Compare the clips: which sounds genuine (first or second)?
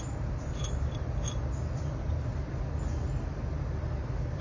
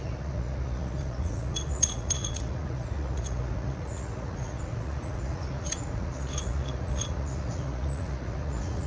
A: first